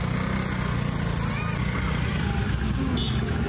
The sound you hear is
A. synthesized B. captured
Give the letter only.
B